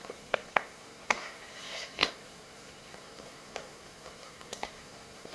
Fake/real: fake